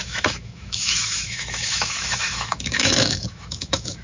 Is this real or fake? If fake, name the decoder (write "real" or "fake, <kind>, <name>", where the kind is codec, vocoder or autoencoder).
fake, autoencoder, DAC-VAE